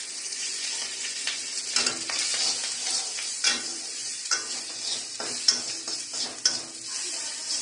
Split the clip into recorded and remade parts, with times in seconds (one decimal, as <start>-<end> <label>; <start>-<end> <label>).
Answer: 0.0-1.4 remade; 1.4-3.3 recorded; 3.3-5.0 remade; 5.0-7.6 recorded